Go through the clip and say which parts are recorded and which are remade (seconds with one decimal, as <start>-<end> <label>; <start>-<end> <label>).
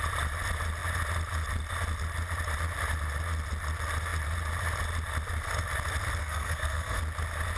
0.0-6.2 recorded; 6.2-7.0 remade; 7.0-7.6 recorded